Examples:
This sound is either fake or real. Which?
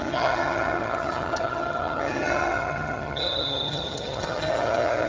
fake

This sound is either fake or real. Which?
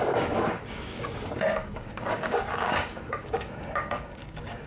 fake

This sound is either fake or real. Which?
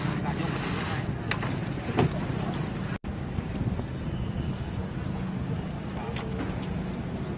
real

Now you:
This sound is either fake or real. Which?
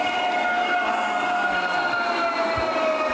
real